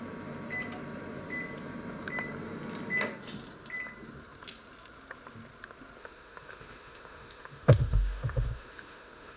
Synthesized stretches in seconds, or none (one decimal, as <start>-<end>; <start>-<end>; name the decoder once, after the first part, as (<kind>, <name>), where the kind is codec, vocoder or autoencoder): 6.0-9.4 (autoencoder, DAC-VAE)